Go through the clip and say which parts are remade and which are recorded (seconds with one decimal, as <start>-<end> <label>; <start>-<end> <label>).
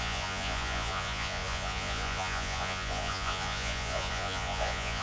0.0-5.0 remade